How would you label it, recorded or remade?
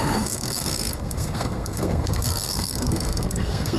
remade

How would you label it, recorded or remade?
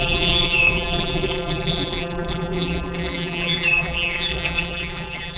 remade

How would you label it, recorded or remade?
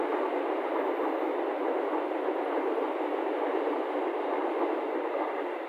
recorded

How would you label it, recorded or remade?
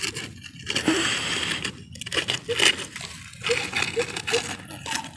recorded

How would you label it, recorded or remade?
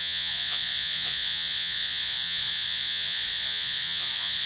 remade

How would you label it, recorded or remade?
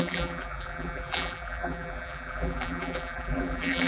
remade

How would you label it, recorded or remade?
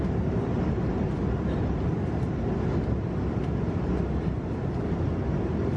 recorded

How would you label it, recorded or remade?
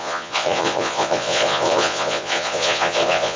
remade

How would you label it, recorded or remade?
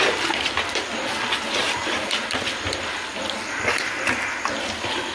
recorded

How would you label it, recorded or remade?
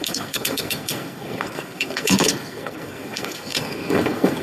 remade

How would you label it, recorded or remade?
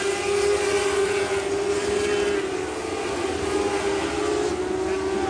recorded